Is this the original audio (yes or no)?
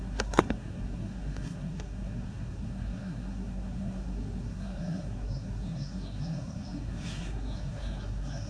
no